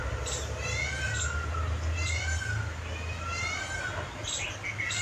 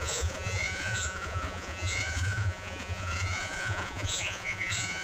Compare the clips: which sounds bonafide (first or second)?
first